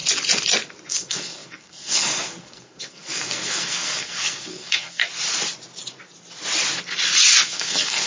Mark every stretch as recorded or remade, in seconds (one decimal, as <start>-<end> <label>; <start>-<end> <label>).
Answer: 0.0-0.9 recorded; 0.9-5.0 remade; 5.0-7.4 recorded; 7.4-8.1 remade